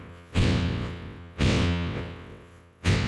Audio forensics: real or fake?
fake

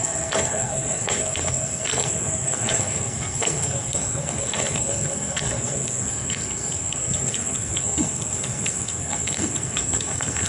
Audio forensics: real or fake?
fake